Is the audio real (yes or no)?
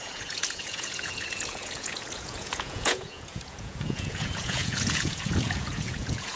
no